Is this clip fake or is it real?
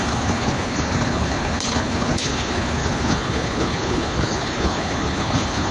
fake